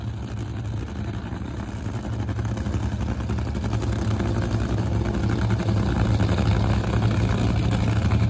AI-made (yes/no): no